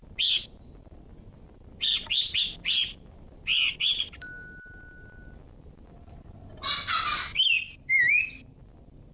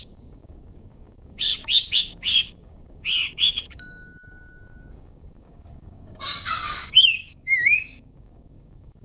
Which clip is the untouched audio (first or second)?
first